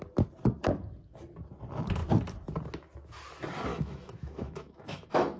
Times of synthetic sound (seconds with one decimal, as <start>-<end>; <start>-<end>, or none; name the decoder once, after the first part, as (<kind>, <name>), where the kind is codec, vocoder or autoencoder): 3.7-5.4 (autoencoder, DAC-VAE)